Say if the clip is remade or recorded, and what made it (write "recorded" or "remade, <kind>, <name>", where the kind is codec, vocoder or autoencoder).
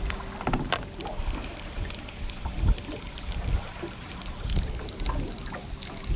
recorded